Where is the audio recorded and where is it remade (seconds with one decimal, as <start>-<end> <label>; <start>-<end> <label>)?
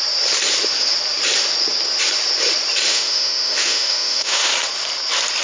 0.0-2.9 recorded; 2.9-4.5 remade; 4.5-5.4 recorded